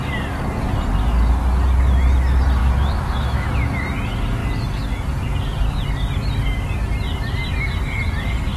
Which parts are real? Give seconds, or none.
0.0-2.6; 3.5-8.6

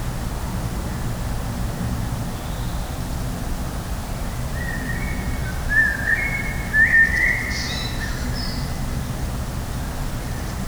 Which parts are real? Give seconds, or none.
0.0-4.0; 4.6-10.7

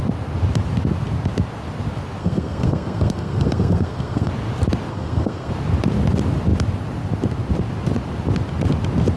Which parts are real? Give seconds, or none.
0.0-2.2; 4.3-4.9; 5.5-9.2

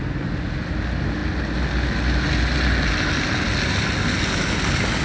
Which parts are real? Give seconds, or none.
0.0-5.0

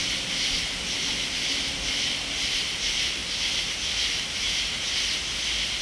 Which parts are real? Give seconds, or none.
0.0-5.8

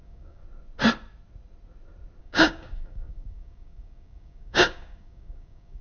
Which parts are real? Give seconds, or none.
0.4-2.2